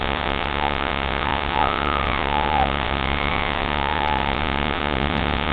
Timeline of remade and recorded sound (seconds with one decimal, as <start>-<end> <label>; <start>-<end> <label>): 0.0-5.5 remade